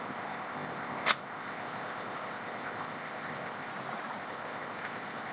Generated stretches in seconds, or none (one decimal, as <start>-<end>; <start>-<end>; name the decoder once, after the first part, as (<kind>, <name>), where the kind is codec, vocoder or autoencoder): 0.0-3.7 (codec, ZipCodec); 4.2-5.3